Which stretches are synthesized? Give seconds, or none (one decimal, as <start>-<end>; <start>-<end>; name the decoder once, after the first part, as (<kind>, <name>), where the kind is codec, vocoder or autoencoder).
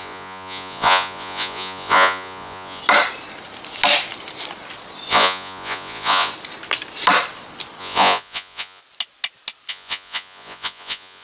0.0-2.8 (vocoder, Vocos); 5.1-6.3; 7.8-8.8; 9.7-11.2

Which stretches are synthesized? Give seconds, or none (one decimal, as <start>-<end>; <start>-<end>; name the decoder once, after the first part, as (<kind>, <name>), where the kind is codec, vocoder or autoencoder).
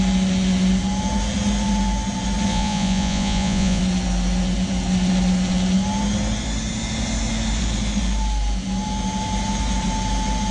2.5-3.8 (vocoder, Vocos)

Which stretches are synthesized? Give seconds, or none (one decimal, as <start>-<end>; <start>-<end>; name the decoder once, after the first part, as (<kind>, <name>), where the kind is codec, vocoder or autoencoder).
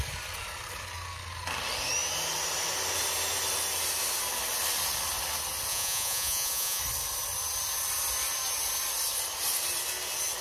5.7-6.8 (vocoder, Vocos)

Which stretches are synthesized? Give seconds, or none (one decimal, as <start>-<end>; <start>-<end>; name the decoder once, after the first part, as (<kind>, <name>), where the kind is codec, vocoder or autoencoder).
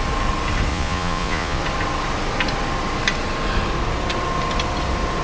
0.7-1.6 (vocoder, Vocos)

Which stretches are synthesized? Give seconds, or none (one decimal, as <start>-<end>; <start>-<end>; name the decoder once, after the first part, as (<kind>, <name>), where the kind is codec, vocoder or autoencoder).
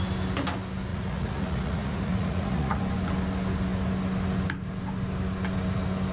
0.9-2.8 (vocoder, Vocos)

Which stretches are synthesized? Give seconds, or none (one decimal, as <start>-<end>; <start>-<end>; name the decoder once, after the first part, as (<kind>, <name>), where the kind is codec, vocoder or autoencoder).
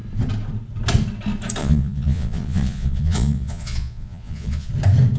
1.6-4.7 (vocoder, Vocos)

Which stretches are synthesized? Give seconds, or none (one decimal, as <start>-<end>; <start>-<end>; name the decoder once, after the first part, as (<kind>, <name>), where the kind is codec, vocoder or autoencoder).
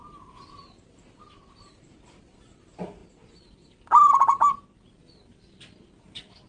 none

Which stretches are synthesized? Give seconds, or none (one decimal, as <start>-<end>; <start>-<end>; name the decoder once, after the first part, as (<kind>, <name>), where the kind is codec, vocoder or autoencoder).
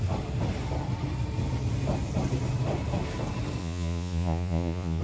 3.6-5.0 (vocoder, Vocos)